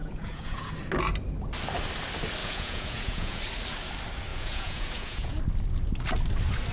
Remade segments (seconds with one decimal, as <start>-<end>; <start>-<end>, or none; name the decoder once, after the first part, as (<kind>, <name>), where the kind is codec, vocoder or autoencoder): 0.0-0.7 (vocoder, Vocos); 2.4-3.4; 4.3-5.4